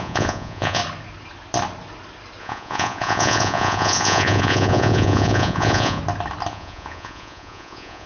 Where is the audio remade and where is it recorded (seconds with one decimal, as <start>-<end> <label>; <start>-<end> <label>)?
0.0-0.8 remade; 0.8-2.4 recorded; 2.4-6.0 remade; 6.0-6.5 recorded; 6.5-8.1 remade